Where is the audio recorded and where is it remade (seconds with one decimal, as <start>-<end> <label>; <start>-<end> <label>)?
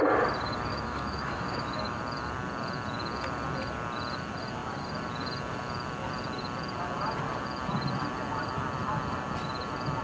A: 0.0-0.7 recorded; 0.7-2.0 remade; 2.0-10.0 recorded